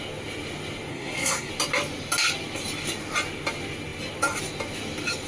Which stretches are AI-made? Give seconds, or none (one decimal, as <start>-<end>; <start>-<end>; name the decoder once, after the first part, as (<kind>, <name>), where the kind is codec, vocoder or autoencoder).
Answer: 0.9-1.5 (codec, SNAC)